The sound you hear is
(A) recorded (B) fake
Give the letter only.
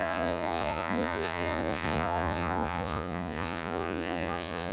B